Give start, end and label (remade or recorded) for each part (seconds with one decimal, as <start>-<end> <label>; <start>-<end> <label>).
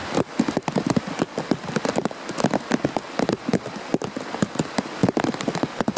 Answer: 0.0-6.0 recorded